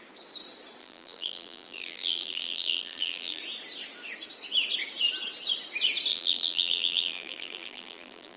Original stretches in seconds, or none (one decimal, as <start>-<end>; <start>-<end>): 0.0-0.8; 3.4-6.1

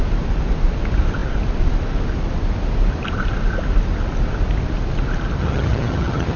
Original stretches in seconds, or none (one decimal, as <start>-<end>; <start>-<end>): 0.0-5.4

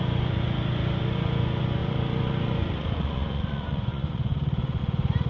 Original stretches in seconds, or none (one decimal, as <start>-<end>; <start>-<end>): none

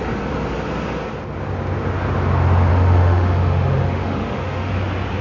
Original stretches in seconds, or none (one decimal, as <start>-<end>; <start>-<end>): 0.0-2.7; 4.7-5.2

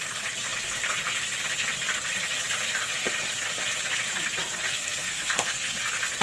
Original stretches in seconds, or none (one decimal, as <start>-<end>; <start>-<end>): 0.0-4.7; 5.8-6.2